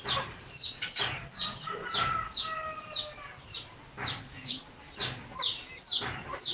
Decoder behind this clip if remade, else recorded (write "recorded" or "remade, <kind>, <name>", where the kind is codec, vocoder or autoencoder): recorded